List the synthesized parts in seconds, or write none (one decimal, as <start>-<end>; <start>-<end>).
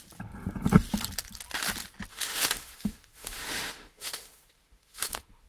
2.1-5.5